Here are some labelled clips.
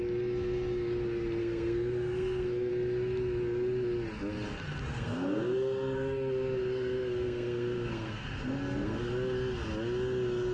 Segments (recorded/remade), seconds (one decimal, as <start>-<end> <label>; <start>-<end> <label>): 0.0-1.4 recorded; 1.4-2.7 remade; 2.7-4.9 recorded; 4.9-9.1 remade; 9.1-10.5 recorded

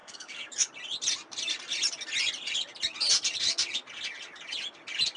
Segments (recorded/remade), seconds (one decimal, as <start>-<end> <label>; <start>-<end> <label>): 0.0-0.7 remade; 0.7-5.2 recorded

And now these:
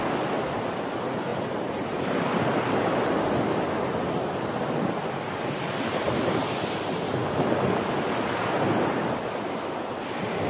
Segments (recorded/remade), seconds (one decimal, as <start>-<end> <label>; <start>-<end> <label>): 0.0-1.3 recorded; 1.3-2.2 remade; 2.2-10.5 recorded